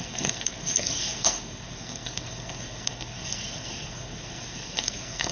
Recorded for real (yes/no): no